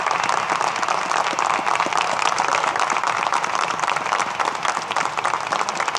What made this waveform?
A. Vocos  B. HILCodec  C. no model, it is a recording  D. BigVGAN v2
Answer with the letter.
C